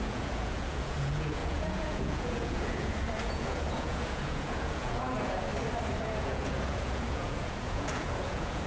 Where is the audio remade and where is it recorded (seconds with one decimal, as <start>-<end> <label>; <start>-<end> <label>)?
0.0-5.5 remade; 5.5-6.0 recorded; 6.0-8.7 remade